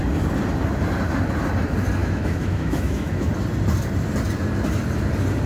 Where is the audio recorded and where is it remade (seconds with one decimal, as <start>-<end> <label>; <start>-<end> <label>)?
0.0-2.0 recorded; 2.0-3.3 remade; 3.3-5.5 recorded

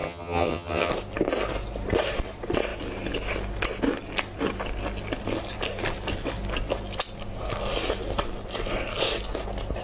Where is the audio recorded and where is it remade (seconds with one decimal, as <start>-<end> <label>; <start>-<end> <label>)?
0.0-0.9 remade; 0.9-9.8 recorded

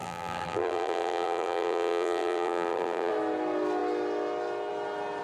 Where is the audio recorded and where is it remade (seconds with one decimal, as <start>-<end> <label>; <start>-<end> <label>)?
0.0-3.1 remade; 3.1-5.2 recorded

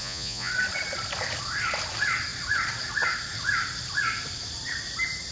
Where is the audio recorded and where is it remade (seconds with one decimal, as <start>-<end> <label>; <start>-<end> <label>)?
0.0-0.5 remade; 0.5-5.3 recorded

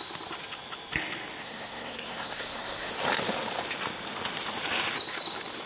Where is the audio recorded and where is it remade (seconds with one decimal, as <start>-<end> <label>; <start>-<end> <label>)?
0.0-1.4 recorded; 1.4-2.9 remade; 2.9-5.7 recorded

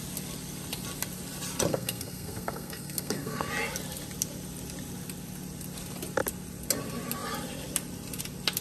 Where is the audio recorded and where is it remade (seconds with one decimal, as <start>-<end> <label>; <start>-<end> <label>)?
0.0-1.7 recorded; 1.7-3.5 remade; 3.5-8.6 recorded

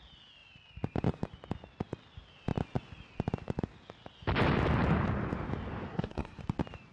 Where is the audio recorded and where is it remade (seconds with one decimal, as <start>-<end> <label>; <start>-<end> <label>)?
0.0-5.9 recorded; 5.9-6.4 remade; 6.4-6.9 recorded